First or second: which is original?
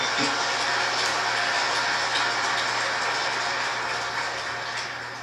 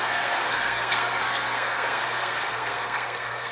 first